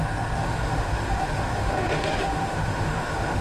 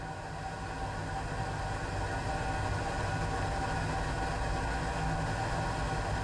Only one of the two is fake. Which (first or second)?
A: first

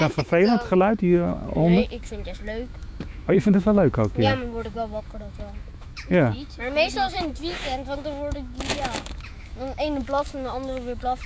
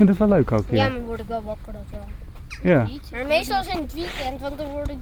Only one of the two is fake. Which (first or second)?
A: first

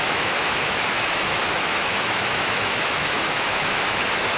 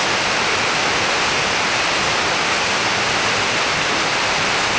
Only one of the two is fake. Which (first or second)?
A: first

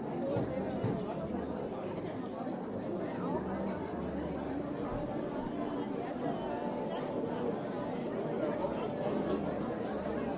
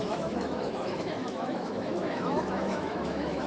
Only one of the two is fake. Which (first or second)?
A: second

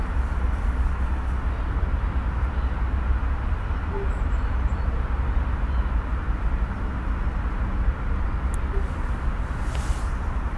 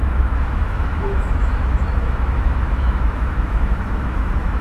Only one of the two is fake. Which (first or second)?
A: second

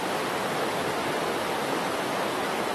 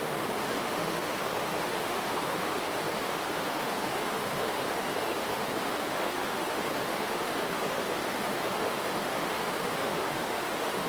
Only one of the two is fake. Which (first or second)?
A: second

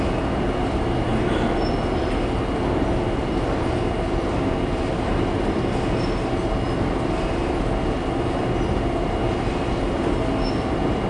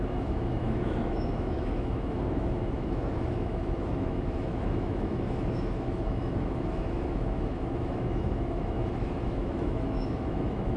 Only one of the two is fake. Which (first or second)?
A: second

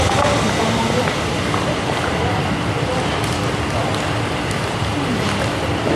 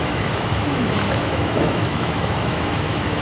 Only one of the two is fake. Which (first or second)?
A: second